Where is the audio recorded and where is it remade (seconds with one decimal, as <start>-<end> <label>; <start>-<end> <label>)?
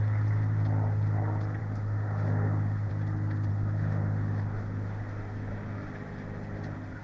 0.0-1.6 recorded; 1.6-2.9 remade; 2.9-3.5 recorded; 3.5-5.0 remade; 5.0-7.0 recorded